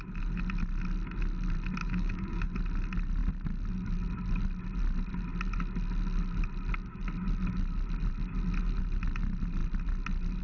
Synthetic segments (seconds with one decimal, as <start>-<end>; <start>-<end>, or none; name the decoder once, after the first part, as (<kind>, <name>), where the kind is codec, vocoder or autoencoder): 1.8-2.5 (codec, DAC)